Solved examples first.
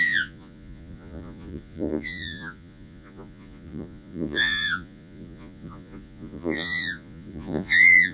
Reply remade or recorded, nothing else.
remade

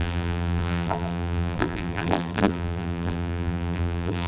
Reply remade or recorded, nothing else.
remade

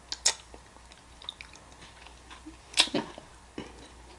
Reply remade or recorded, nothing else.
recorded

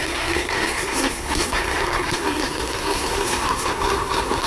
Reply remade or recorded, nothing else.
remade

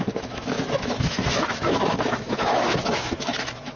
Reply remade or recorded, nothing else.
remade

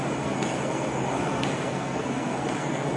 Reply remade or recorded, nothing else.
remade